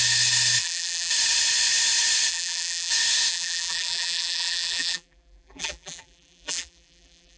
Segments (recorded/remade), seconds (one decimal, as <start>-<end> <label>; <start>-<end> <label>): 0.0-0.6 recorded; 0.6-1.1 remade; 1.1-2.3 recorded; 2.3-2.9 remade; 2.9-3.3 recorded; 3.3-7.4 remade